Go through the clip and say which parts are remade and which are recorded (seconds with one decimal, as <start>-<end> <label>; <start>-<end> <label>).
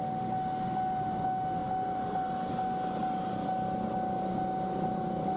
0.0-5.4 recorded